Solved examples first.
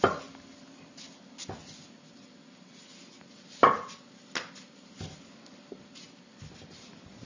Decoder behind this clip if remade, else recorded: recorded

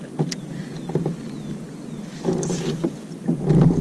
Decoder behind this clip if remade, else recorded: recorded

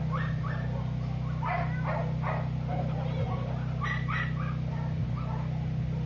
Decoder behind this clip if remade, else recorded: recorded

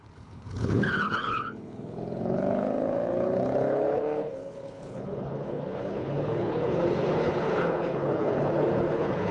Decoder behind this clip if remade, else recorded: remade, codec, HILCodec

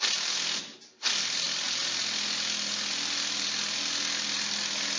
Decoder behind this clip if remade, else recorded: recorded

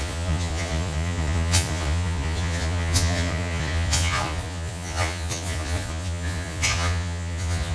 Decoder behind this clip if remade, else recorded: remade, vocoder, Vocos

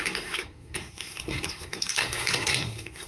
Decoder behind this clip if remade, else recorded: remade, codec, SNAC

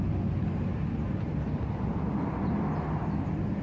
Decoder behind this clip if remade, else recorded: recorded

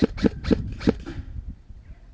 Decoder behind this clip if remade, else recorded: recorded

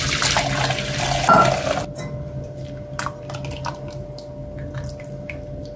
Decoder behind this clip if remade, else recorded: recorded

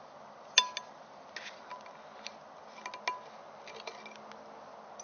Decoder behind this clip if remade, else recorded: recorded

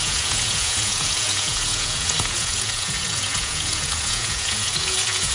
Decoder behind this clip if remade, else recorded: remade, vocoder, Vocos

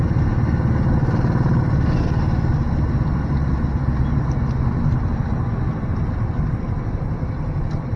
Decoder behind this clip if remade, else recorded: recorded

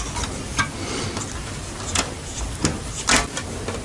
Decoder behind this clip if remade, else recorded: recorded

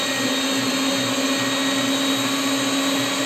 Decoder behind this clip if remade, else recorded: recorded